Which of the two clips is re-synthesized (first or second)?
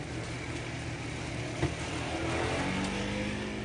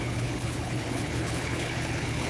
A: second